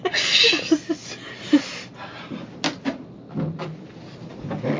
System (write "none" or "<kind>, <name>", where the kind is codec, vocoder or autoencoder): none